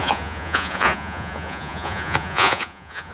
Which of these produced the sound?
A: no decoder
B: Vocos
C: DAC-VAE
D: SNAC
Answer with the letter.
B